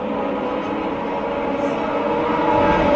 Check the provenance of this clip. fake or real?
real